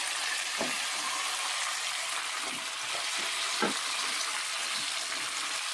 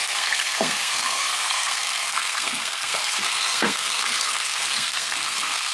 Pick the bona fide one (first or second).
first